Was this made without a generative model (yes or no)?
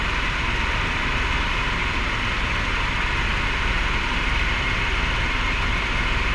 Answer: no